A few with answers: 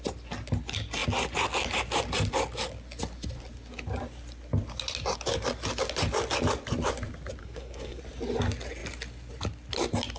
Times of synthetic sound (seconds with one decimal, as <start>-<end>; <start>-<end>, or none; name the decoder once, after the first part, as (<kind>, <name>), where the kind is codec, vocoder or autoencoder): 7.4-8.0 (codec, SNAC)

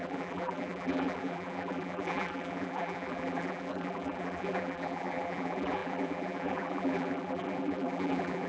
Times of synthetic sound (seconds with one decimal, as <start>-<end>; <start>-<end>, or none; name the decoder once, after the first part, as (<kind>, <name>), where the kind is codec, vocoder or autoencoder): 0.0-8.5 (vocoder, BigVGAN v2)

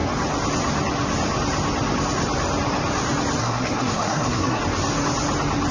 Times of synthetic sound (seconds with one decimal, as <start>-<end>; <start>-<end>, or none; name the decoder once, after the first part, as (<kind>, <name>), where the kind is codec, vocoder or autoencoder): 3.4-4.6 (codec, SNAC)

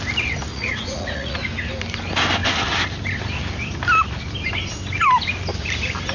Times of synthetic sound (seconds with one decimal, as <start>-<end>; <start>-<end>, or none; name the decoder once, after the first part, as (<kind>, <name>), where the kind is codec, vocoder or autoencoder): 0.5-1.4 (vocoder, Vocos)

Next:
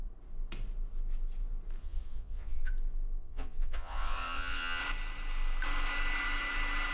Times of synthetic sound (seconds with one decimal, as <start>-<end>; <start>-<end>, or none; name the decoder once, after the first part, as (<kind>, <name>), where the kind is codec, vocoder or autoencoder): 1.8-2.7 (vocoder, Vocos); 3.2-4.8

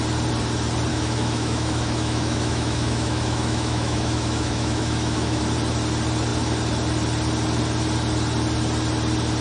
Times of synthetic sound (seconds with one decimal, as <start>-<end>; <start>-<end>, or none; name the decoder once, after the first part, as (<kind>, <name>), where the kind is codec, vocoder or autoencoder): 0.9-5.4 (autoencoder, DAC-VAE)

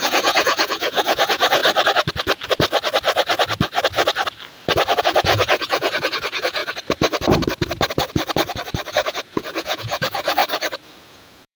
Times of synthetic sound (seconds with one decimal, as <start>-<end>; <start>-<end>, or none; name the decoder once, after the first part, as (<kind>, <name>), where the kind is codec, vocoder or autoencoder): 0.0-1.6 (vocoder, Vocos); 5.0-6.6; 8.9-10.4; 11.1-11.6